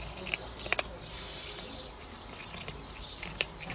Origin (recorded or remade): recorded